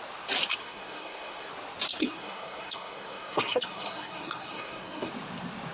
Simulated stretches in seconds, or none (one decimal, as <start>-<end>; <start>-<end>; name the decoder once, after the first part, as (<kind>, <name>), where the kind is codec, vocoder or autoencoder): 0.6-1.5 (codec, SNAC); 1.9-5.1